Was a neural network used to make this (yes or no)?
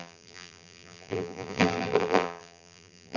yes